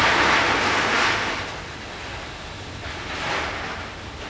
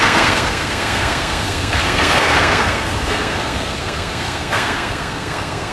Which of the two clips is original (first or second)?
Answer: first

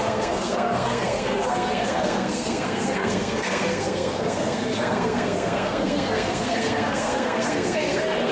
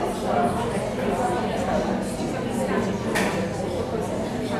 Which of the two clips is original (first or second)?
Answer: second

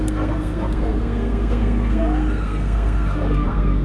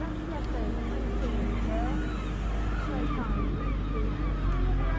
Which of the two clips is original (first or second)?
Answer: second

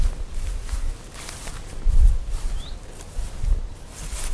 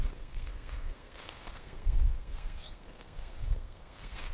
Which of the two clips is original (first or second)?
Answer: first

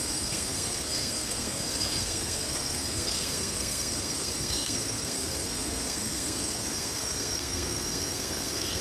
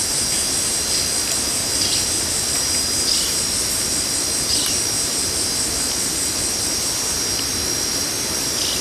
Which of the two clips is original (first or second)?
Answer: second